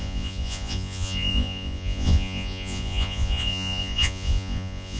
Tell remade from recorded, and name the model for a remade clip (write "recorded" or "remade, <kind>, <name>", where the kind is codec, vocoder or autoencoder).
remade, vocoder, Vocos